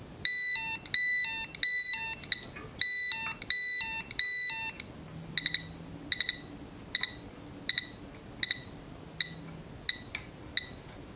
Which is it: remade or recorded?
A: recorded